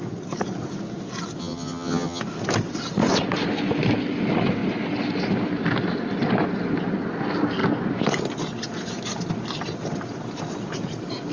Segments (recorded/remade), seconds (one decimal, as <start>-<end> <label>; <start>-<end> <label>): 0.0-1.4 recorded; 1.4-2.2 remade; 2.2-11.3 recorded